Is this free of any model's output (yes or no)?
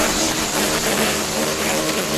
no